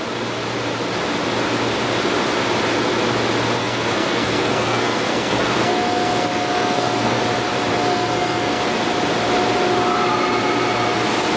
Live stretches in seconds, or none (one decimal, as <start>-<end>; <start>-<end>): 0.0-3.6; 7.2-7.7; 8.6-11.4